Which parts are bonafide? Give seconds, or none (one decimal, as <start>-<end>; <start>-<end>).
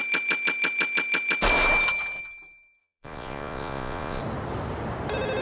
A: 0.0-2.8; 4.2-5.4